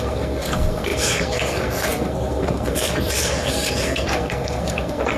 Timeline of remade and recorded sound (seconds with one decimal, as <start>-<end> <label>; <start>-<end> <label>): 0.0-5.2 remade